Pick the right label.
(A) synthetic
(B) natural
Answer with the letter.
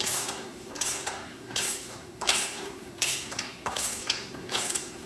A